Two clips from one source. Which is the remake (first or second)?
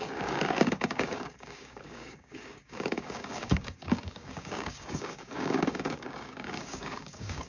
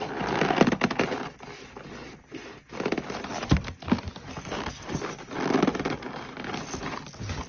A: first